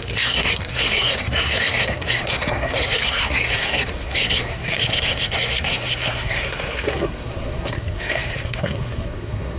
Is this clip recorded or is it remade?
remade